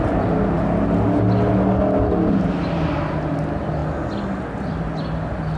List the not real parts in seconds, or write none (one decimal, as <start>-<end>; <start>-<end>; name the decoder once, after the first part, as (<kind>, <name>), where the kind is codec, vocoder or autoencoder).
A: none